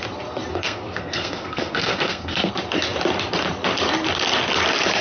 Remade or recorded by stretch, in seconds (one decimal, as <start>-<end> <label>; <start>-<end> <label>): 0.0-0.5 recorded; 0.5-2.5 remade; 2.5-5.0 recorded